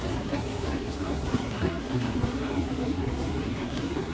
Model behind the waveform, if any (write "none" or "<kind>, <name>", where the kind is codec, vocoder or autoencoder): codec, SNAC